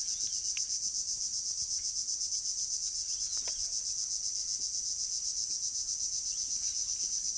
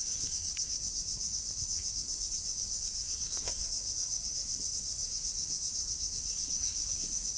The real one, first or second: first